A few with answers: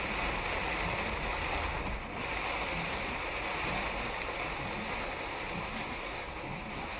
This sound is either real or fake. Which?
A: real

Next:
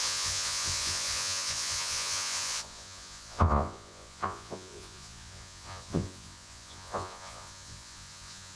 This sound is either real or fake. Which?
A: fake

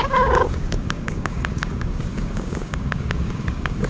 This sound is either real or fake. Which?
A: fake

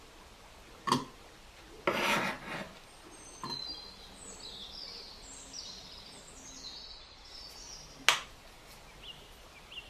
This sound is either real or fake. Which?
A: real